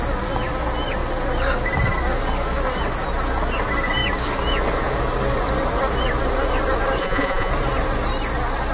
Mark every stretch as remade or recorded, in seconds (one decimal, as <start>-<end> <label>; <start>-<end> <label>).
0.0-7.0 recorded; 7.0-7.5 remade; 7.5-8.7 recorded